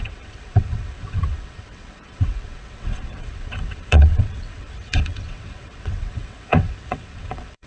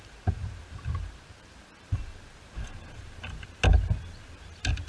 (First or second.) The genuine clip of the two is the second